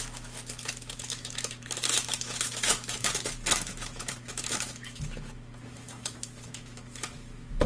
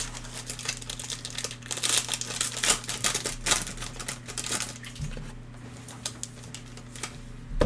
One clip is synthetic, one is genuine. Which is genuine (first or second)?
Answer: second